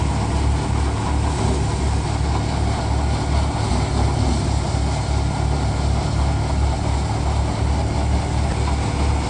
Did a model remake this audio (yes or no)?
no